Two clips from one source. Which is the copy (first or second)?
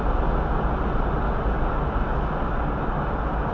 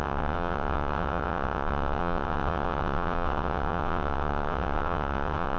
second